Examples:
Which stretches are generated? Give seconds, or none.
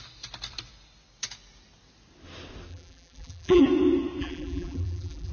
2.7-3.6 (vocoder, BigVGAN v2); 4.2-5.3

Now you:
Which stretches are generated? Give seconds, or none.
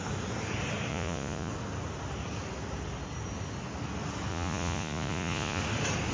0.9-1.5 (vocoder, Vocos); 4.3-5.6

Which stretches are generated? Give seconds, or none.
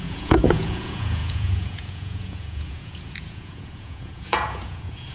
0.0-5.1 (vocoder, Vocos)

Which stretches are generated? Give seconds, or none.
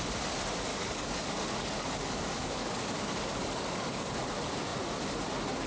0.7-4.1 (codec, DAC)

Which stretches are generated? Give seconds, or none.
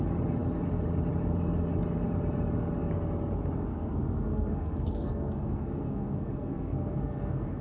3.7-7.6 (codec, SNAC)